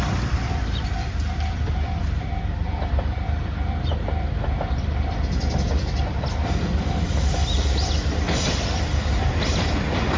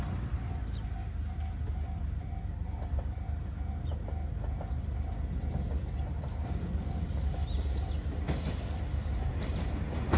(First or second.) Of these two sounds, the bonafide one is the second